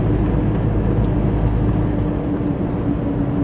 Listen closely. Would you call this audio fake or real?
real